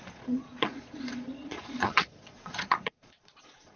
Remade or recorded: remade